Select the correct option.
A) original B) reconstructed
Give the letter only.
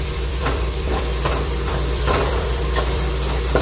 B